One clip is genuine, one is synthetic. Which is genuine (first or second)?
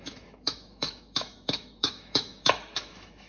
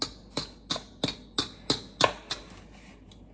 second